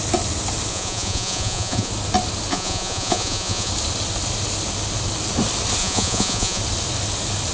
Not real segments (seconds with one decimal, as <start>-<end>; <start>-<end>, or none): 0.7-1.9; 2.5-3.7; 5.8-6.6